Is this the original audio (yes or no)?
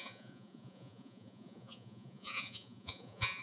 no